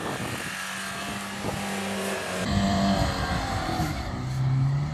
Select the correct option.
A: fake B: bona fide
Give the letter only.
B